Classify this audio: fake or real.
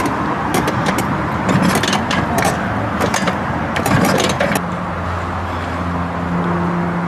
real